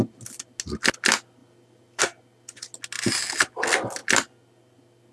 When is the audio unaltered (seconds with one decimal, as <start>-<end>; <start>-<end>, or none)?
0.0-1.4; 2.0-5.1

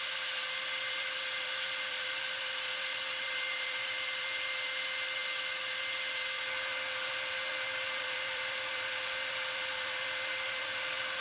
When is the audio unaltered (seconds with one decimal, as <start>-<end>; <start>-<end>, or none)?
5.2-5.7

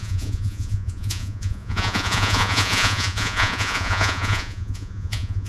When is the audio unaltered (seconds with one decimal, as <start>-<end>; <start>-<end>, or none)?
none